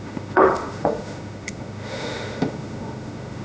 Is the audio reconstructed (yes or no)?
yes